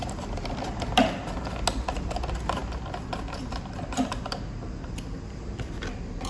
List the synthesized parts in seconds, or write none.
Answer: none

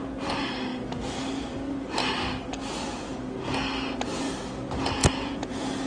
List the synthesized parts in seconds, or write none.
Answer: 5.0-5.9

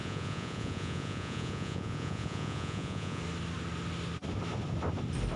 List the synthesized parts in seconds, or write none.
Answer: 0.0-3.2

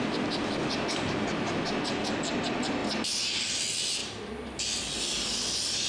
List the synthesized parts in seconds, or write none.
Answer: none